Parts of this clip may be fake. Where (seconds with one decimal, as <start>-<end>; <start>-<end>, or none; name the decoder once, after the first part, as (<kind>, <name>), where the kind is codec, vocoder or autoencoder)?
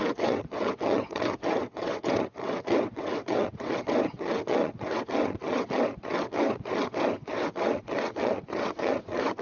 0.0-9.4 (vocoder, WaveNeXt)